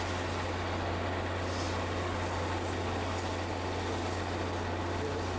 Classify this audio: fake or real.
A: real